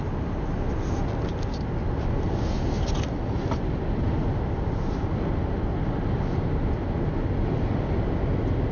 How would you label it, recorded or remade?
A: recorded